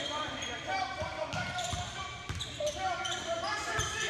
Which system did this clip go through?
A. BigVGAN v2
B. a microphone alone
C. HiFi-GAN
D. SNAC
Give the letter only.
A